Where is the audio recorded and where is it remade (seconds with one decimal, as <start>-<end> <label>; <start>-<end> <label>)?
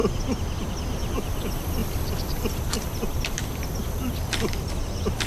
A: 0.0-5.3 recorded